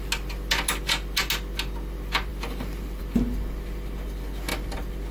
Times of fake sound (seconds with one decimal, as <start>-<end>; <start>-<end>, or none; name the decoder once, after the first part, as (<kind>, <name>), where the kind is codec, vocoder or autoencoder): 2.3-3.0 (vocoder, BigVGAN v2)